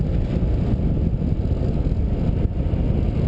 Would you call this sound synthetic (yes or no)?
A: no